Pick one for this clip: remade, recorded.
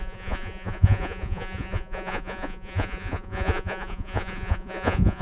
remade